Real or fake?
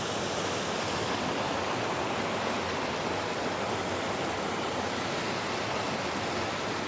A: real